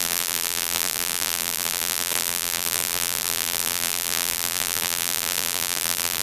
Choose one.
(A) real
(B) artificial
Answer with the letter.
B